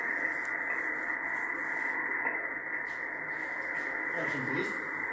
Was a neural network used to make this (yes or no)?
no